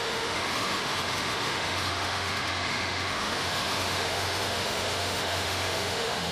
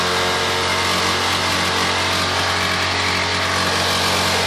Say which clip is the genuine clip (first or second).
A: second